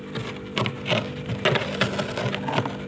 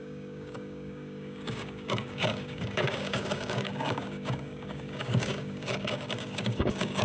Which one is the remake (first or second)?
second